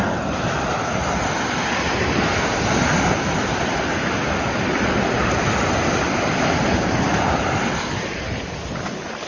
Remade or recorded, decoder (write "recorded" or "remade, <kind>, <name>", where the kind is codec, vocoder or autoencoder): recorded